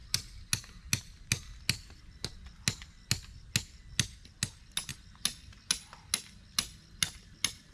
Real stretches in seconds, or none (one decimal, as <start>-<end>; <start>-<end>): 0.0-7.7